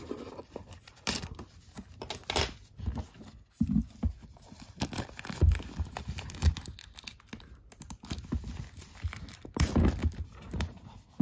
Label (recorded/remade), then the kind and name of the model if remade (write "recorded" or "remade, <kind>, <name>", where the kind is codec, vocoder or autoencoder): recorded